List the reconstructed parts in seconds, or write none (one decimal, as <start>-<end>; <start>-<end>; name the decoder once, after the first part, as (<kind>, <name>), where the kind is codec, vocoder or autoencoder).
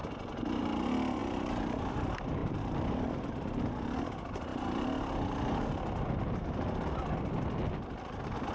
1.2-1.9 (vocoder, BigVGAN v2); 2.4-3.3